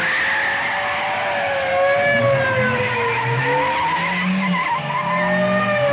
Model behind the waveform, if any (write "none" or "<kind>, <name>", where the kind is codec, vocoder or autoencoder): none